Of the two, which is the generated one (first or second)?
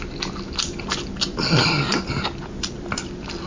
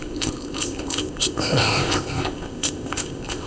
second